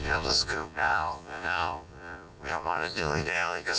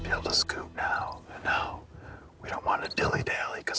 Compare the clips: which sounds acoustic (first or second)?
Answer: second